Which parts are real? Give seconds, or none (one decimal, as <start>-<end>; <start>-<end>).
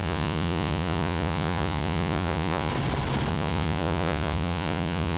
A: 2.7-3.3